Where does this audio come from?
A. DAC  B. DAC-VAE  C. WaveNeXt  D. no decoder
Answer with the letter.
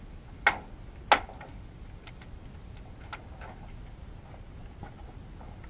D